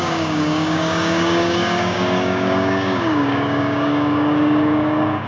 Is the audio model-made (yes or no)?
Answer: yes